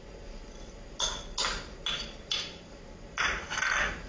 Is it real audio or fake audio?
real